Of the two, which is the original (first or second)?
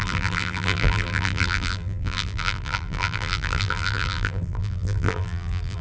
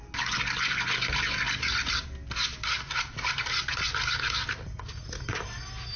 second